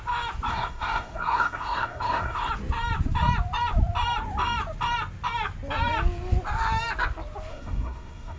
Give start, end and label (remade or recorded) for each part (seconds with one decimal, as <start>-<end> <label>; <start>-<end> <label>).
0.0-0.5 recorded; 0.5-2.5 remade; 2.5-7.5 recorded; 7.5-8.4 remade